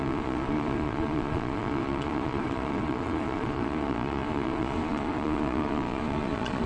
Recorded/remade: remade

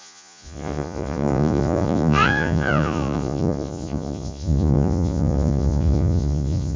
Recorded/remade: remade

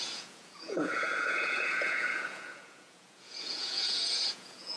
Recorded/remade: remade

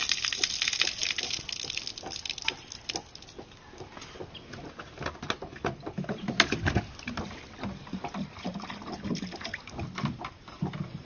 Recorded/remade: recorded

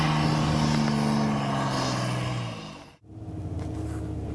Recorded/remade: recorded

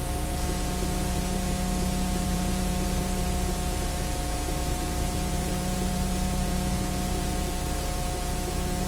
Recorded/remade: remade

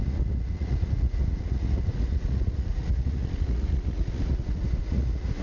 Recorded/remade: remade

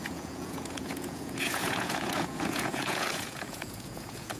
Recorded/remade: remade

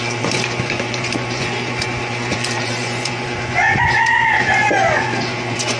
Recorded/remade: remade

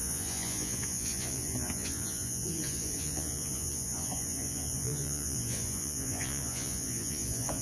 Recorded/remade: remade